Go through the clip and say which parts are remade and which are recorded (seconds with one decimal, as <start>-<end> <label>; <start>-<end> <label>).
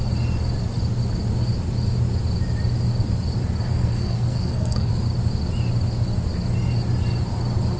0.0-3.7 recorded; 3.7-4.9 remade; 4.9-7.8 recorded